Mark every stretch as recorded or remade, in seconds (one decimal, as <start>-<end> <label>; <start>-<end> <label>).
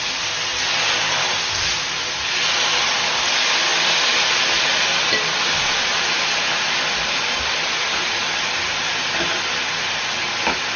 0.0-10.8 recorded